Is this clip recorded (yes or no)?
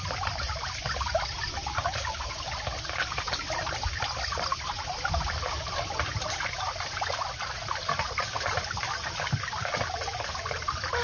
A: yes